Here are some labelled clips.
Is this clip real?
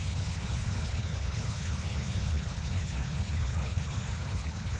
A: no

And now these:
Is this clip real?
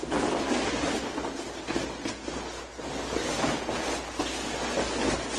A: yes